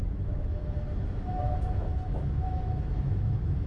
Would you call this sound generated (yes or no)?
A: yes